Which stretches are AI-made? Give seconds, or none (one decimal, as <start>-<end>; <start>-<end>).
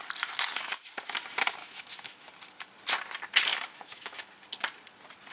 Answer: 1.6-2.3; 3.5-4.3